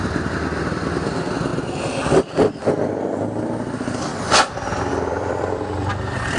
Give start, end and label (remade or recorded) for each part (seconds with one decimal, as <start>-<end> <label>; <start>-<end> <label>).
0.0-1.5 remade; 1.5-2.2 recorded; 2.2-4.1 remade; 4.1-4.9 recorded; 4.9-6.4 remade